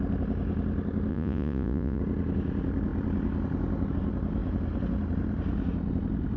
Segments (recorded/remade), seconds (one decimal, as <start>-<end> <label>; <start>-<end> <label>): 0.0-1.1 recorded; 1.1-2.0 remade; 2.0-6.4 recorded